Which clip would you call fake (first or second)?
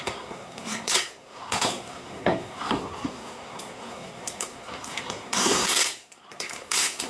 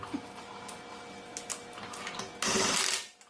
first